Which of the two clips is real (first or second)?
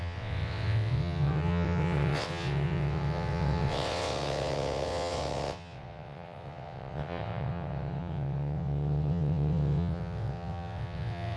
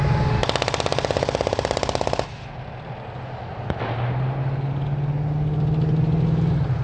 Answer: second